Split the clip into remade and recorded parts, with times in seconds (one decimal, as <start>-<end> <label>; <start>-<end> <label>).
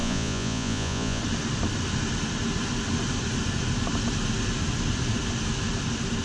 0.0-1.2 remade; 1.2-6.2 recorded